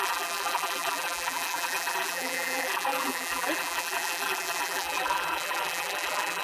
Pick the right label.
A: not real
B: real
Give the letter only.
A